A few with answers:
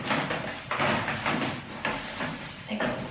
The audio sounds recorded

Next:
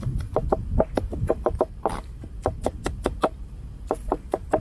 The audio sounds recorded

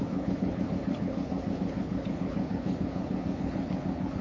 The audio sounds remade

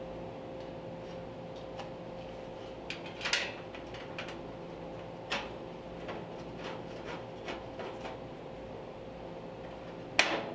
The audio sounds recorded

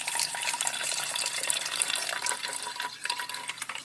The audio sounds remade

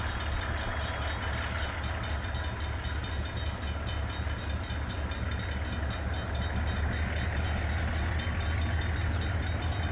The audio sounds recorded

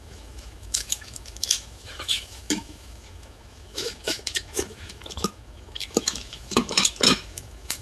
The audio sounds remade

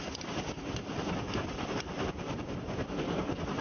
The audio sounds recorded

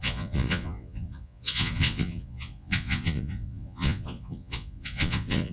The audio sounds remade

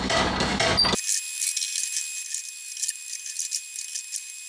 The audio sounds recorded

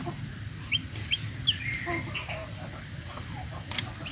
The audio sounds recorded